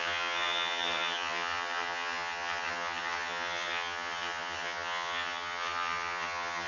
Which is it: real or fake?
fake